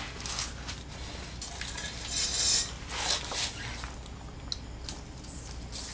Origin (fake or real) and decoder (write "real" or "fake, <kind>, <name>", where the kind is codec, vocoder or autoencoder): real